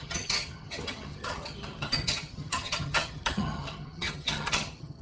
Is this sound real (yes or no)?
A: no